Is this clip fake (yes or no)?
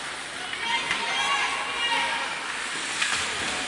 no